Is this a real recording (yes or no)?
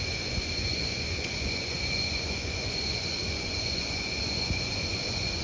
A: no